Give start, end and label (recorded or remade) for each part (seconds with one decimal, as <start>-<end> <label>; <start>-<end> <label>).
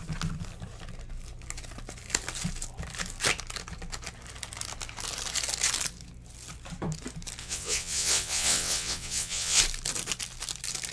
0.0-7.4 recorded; 7.4-9.6 remade; 9.6-10.9 recorded